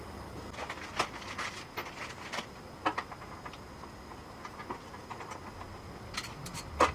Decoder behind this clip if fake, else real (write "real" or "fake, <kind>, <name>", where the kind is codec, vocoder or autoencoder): real